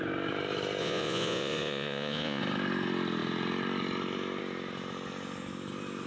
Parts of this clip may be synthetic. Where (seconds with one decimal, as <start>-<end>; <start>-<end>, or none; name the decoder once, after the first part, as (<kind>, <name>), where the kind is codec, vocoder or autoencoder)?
0.8-2.4 (vocoder, Vocos)